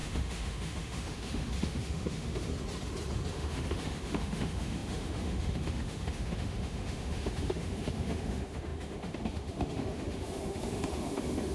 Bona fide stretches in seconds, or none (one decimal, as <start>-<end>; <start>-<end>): 2.5-3.3